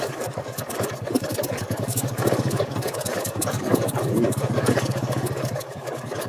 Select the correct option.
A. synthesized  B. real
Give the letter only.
A